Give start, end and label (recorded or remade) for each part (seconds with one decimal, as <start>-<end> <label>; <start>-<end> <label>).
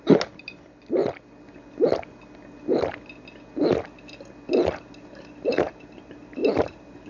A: 0.0-1.0 remade; 1.0-4.9 recorded; 4.9-7.1 remade